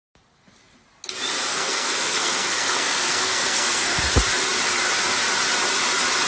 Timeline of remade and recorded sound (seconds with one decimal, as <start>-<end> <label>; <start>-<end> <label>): 0.0-1.5 recorded; 1.5-4.0 remade; 4.0-6.3 recorded